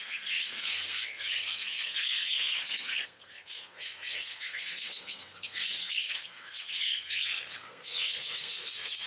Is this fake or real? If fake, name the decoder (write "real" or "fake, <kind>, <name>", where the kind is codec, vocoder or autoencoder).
fake, codec, SNAC